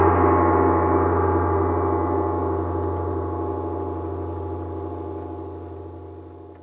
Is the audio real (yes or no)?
yes